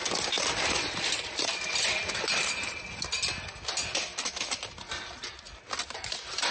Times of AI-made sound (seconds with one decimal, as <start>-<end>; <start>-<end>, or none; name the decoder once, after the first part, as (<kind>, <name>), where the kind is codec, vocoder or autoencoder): none